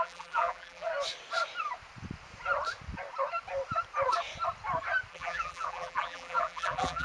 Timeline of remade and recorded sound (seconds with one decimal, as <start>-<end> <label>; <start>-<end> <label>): 0.0-0.9 remade; 0.9-5.1 recorded; 5.1-7.0 remade